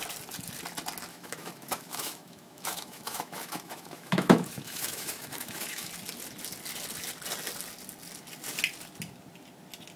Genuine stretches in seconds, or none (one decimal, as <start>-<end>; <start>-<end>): 0.0-1.1; 5.9-10.0